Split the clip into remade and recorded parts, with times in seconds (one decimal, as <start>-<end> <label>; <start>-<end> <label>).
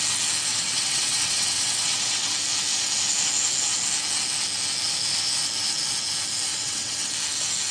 0.0-0.5 recorded; 0.5-2.3 remade; 2.3-6.5 recorded; 6.5-7.1 remade; 7.1-7.7 recorded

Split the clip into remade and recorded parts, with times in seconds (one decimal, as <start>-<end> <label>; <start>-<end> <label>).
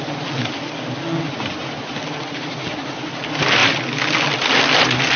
0.0-5.2 recorded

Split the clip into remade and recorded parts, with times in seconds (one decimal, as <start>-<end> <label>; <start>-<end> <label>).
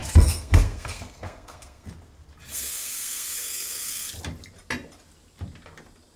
0.0-1.9 remade; 1.9-2.5 recorded; 2.5-4.1 remade; 4.1-6.2 recorded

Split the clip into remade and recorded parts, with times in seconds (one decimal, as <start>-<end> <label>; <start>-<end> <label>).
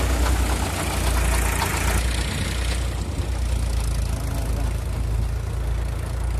0.0-6.4 recorded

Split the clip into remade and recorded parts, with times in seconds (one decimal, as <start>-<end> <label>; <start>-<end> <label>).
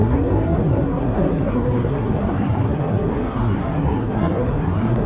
0.0-5.1 remade